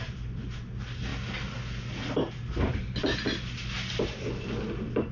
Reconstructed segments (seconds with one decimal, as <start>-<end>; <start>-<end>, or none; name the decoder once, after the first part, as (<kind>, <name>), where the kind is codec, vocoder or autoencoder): none